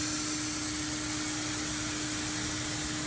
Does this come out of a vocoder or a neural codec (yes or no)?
no